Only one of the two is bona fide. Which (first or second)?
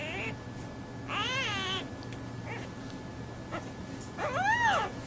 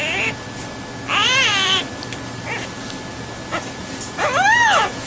first